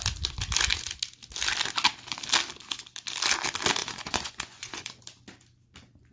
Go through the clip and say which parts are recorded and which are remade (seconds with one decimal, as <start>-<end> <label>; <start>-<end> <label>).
0.0-3.8 recorded; 3.8-5.0 remade; 5.0-6.1 recorded